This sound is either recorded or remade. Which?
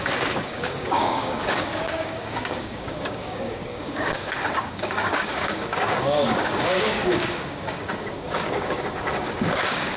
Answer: remade